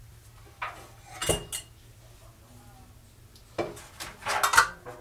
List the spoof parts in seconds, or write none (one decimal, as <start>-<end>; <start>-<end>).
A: none